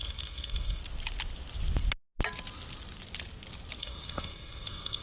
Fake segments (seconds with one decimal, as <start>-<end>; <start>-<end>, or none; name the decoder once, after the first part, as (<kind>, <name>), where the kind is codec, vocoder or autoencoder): 0.0-0.8 (codec, SNAC); 3.8-5.0